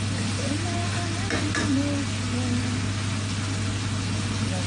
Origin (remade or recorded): recorded